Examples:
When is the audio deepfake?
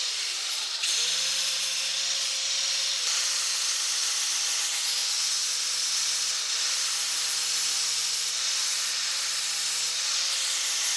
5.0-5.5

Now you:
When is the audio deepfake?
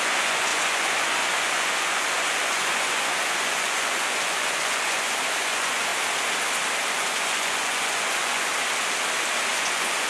0.0-5.9; 6.9-8.5; 9.5-10.1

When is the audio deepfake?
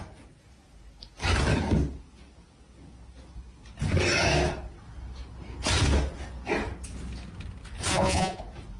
7.9-8.4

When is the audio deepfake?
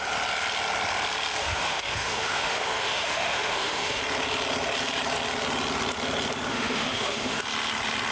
1.4-4.0; 6.5-7.4